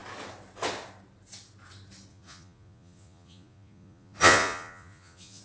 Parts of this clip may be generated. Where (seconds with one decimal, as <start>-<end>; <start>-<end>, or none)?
2.1-5.4